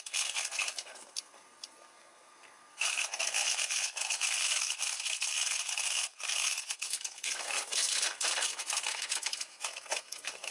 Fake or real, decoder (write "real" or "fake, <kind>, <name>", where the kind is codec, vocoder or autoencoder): fake, codec, SNAC